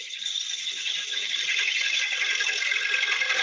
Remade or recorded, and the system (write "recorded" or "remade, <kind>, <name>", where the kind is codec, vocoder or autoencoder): recorded